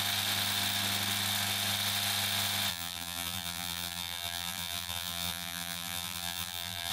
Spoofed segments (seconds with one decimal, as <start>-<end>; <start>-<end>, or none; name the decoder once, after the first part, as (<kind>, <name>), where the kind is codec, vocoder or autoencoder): 2.7-6.9 (vocoder, BigVGAN v2)